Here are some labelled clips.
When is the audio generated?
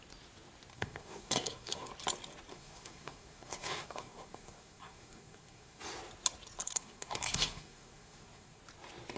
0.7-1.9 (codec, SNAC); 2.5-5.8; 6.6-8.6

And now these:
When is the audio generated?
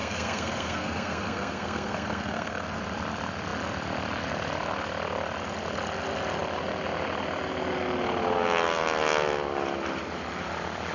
0.0-2.8 (codec, SNAC)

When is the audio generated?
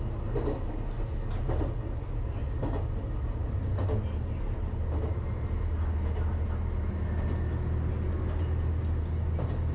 none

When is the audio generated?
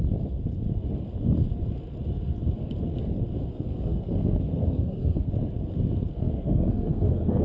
3.5-5.3 (codec, SNAC); 6.1-7.4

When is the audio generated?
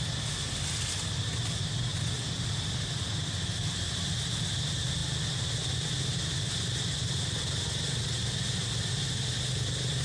none